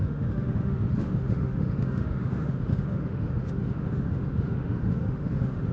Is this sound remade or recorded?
remade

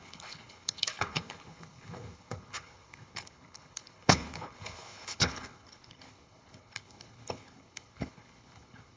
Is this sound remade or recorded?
remade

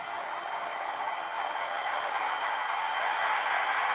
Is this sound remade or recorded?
remade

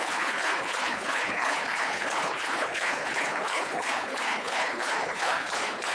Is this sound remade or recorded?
remade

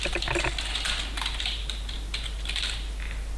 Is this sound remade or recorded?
recorded